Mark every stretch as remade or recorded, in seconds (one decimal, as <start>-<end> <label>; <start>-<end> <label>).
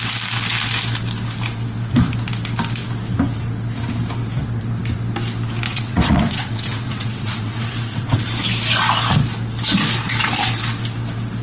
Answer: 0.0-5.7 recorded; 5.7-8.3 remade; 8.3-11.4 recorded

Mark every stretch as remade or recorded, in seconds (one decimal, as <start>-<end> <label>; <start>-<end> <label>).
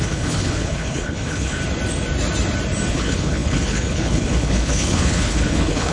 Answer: 0.0-1.6 remade; 1.6-2.9 recorded; 2.9-5.9 remade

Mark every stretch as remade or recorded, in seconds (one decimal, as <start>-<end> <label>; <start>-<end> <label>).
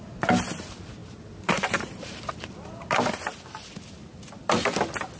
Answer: 0.0-1.0 recorded; 1.0-2.5 remade; 2.5-5.2 recorded